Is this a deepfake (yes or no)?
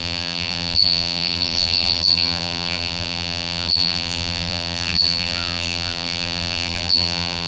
yes